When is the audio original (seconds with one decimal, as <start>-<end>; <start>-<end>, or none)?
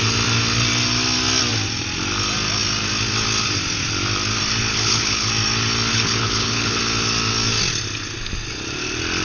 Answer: 0.0-4.7; 5.3-5.9; 6.8-9.2